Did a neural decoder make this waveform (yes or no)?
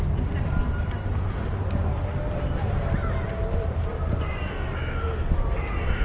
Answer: no